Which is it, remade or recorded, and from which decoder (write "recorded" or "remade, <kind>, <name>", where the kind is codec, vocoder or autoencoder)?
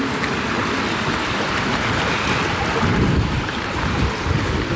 recorded